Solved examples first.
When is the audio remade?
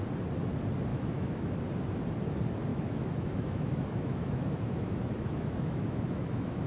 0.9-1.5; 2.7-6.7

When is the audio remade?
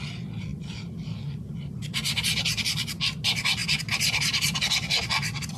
none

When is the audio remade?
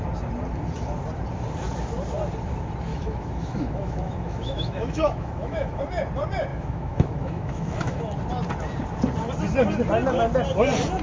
2.9-5.8; 6.5-8.0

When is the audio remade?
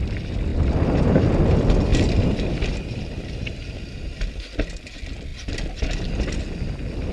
none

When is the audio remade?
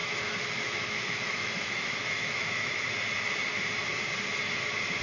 0.0-2.9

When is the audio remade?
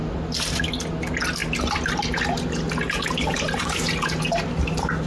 none